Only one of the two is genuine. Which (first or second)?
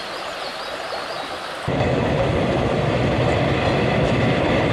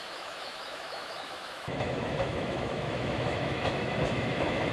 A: first